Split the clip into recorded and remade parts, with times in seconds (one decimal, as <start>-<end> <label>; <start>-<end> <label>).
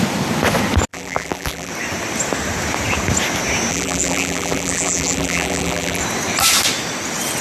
0.0-0.9 recorded; 0.9-1.7 remade; 1.7-3.7 recorded; 3.7-6.0 remade; 6.0-7.4 recorded